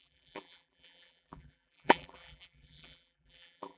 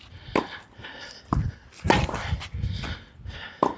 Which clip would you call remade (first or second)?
first